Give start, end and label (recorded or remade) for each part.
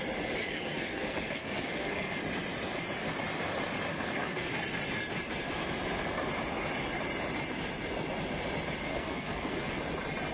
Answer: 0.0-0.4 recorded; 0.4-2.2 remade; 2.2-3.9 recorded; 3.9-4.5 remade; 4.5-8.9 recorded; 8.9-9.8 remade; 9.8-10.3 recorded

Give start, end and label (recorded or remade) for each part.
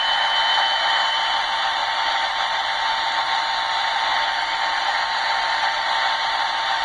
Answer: 0.0-6.8 recorded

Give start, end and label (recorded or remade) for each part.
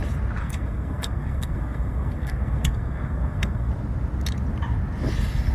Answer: 0.0-0.4 recorded; 0.4-3.7 remade; 3.7-5.5 recorded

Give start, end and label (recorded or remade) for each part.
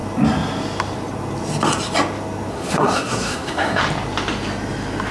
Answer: 0.0-2.5 recorded; 2.5-3.8 remade; 3.8-5.1 recorded